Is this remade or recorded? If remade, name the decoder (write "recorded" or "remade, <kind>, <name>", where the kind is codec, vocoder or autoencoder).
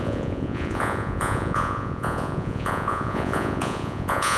remade, vocoder, Vocos